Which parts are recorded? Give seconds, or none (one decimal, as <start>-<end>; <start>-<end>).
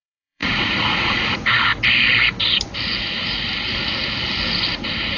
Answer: 1.7-4.8